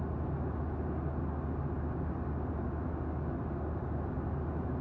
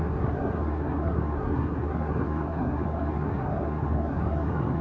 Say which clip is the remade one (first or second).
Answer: second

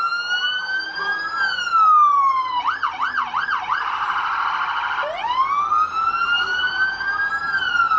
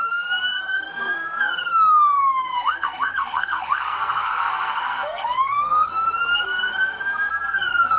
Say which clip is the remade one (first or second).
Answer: second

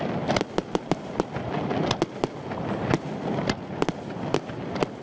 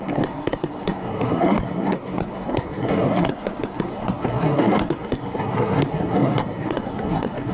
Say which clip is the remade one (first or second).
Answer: second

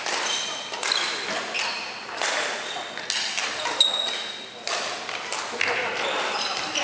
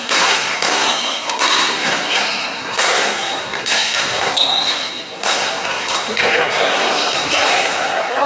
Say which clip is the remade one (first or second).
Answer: second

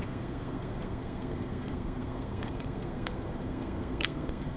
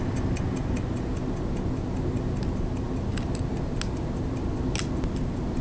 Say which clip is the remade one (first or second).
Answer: first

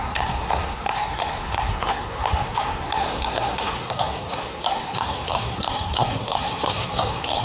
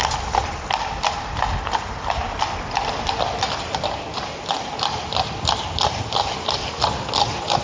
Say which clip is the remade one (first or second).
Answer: first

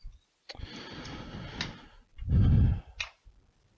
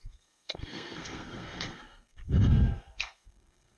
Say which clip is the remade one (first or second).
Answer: second